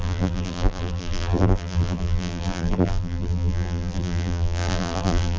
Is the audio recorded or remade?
remade